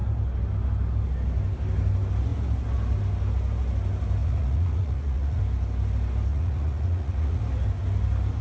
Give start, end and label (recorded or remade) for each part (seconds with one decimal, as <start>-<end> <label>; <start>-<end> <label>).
0.0-4.2 recorded; 4.2-5.4 remade; 5.4-6.3 recorded; 6.3-7.4 remade; 7.4-8.4 recorded